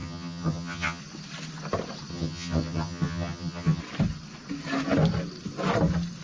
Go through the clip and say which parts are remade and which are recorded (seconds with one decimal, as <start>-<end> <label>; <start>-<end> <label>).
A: 0.0-1.0 remade; 1.0-2.1 recorded; 2.1-3.8 remade; 3.8-6.2 recorded